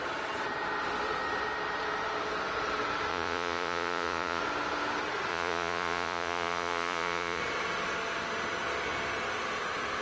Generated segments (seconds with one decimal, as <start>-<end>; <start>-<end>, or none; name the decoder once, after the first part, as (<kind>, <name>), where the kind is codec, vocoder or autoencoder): 3.1-4.4 (vocoder, Vocos); 5.3-7.4